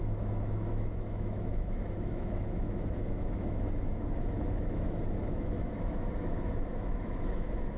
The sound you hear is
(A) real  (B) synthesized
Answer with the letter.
B